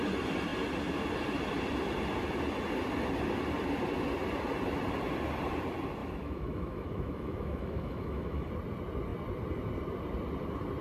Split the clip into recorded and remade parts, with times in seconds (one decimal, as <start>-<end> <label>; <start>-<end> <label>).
0.0-6.0 recorded; 6.0-8.5 remade; 8.5-10.8 recorded